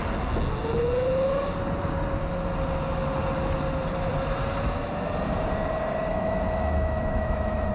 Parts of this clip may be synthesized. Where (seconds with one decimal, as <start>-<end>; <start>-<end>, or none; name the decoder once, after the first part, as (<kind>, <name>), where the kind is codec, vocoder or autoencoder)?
6.1-7.7 (autoencoder, DAC-VAE)